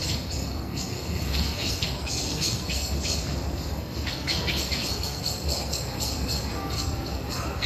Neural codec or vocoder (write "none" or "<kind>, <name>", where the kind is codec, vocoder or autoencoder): codec, SNAC